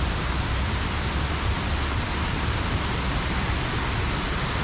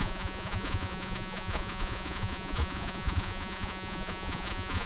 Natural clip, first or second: first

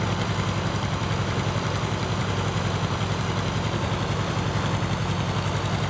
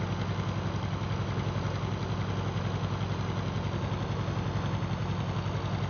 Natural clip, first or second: second